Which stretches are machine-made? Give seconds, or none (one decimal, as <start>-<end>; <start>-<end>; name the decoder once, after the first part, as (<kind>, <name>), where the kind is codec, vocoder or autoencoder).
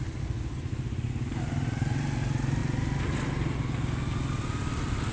none